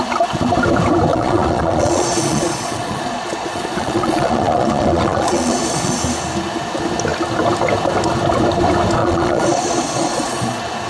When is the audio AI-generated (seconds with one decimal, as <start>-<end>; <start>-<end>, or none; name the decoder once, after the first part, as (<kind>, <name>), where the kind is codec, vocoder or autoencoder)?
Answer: 1.1-6.0 (vocoder, Vocos); 9.0-10.3